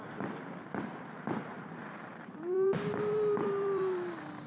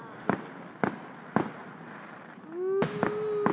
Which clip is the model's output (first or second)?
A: first